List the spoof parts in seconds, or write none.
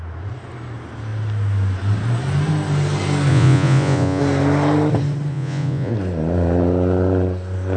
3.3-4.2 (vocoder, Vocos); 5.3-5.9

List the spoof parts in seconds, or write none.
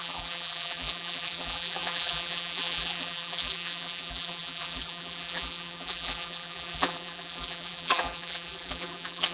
0.0-9.3 (vocoder, BigVGAN v2)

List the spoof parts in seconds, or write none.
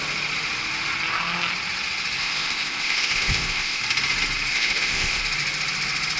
2.2-3.8 (codec, ZipCodec); 4.5-5.2